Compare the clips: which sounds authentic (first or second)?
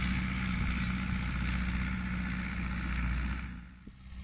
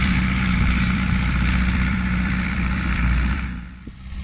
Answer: first